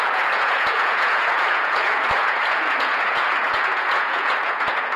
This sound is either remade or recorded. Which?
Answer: remade